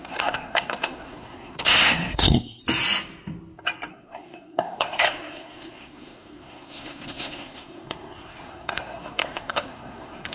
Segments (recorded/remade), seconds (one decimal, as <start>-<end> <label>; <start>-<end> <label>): 0.0-2.6 remade; 2.6-3.9 recorded; 3.9-10.3 remade